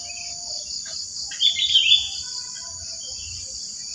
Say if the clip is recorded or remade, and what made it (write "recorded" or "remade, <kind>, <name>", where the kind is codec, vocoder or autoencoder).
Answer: recorded